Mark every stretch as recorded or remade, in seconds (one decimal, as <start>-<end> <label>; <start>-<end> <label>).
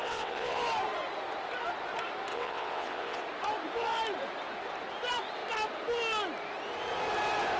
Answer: 0.0-0.6 remade; 0.6-2.3 recorded; 2.3-3.2 remade; 3.2-7.6 recorded